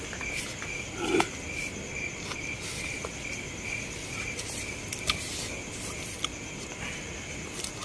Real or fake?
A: real